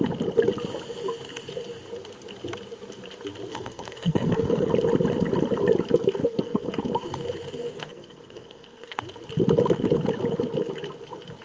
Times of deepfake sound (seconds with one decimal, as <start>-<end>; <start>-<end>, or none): 3.5-4.7; 6.2-6.7; 7.7-9.0